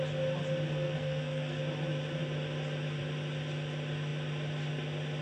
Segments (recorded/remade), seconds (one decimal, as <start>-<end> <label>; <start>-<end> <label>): 0.0-0.7 recorded; 0.7-1.6 remade; 1.6-5.2 recorded